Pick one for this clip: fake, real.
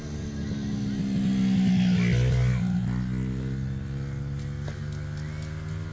real